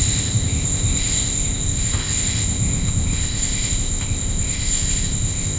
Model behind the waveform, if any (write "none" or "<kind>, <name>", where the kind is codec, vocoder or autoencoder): codec, ZipCodec